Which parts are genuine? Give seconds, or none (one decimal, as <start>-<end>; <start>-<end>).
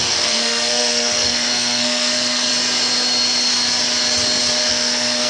2.5-4.7